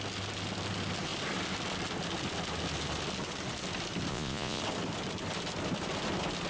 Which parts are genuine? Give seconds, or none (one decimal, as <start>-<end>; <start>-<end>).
0.0-4.1; 4.6-6.5